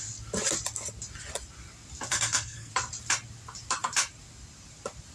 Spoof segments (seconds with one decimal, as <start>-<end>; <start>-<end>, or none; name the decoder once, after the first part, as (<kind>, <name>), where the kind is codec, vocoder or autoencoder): 2.1-2.7 (codec, SNAC)